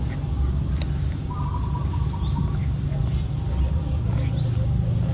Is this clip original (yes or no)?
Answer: yes